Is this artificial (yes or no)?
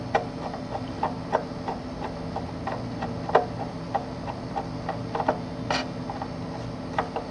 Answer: no